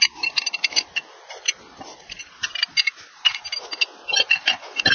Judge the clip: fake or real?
real